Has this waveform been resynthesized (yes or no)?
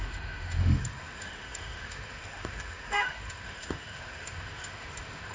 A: yes